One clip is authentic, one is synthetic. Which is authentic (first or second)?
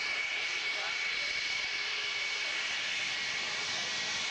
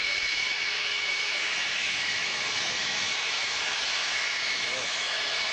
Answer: first